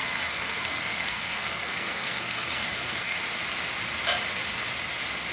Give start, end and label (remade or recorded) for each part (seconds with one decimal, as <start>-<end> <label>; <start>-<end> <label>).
0.0-3.2 remade; 3.2-5.3 recorded